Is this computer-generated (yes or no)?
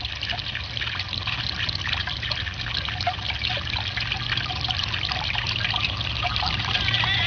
no